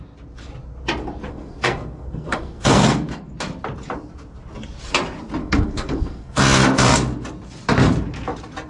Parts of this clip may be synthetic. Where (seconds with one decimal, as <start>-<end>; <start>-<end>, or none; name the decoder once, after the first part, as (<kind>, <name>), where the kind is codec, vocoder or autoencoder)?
1.3-3.3 (codec, SNAC); 5.4-6.4